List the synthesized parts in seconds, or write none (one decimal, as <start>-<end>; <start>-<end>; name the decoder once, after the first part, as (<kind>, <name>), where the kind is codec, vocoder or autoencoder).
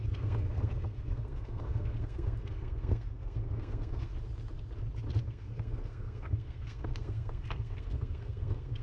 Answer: 0.0-4.1 (codec, SNAC); 5.2-8.8